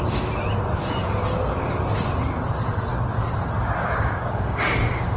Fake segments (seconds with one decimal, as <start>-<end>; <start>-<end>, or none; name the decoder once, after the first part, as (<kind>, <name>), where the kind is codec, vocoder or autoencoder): 3.8-5.2 (codec, DAC)